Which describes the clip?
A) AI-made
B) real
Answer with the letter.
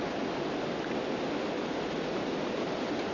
B